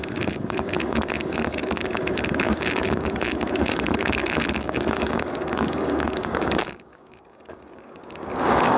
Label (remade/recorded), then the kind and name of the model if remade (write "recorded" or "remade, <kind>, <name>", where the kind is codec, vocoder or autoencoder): remade, codec, DAC